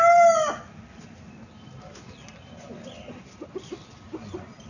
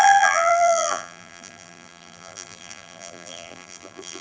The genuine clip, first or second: first